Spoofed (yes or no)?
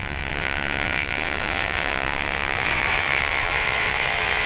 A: yes